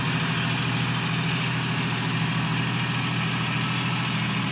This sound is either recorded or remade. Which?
recorded